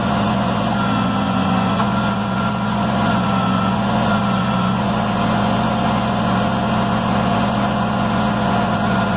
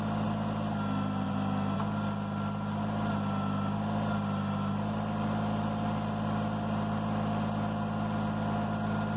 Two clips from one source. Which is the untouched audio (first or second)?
second